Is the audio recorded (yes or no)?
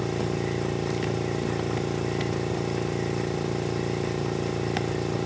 yes